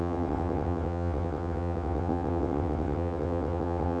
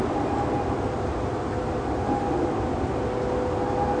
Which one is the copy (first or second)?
first